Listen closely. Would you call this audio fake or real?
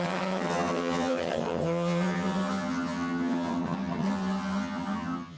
fake